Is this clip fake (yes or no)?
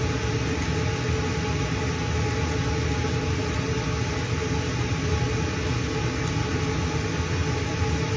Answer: no